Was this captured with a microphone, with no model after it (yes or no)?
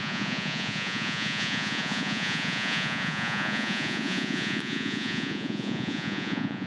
no